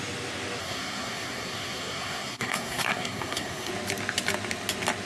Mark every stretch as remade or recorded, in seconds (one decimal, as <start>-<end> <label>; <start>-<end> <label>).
0.0-0.6 recorded; 0.6-3.7 remade; 3.7-5.1 recorded